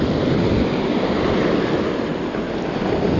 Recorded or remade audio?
recorded